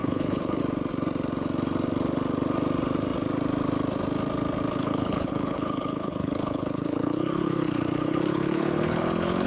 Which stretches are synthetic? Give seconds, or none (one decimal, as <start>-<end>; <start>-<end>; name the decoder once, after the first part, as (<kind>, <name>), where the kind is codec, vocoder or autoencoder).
0.0-0.6 (codec, HILCodec); 4.8-9.5